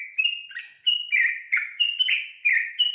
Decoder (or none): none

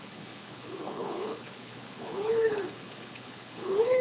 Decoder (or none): codec, HILCodec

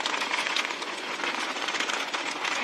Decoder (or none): vocoder, Vocos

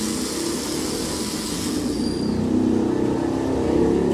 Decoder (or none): none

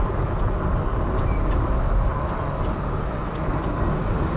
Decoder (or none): none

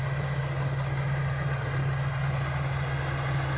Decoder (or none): none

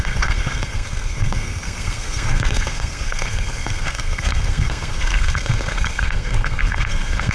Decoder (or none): codec, SNAC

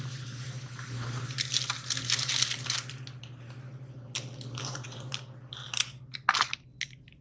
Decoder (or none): none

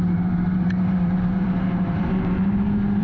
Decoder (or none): vocoder, BigVGAN v2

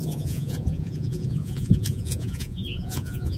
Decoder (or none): vocoder, Vocos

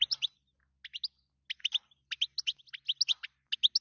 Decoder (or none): none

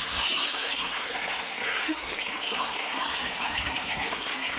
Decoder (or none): codec, SNAC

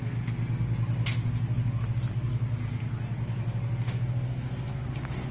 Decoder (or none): none